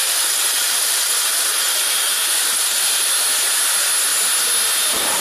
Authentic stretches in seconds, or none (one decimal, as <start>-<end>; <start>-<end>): 3.1-5.2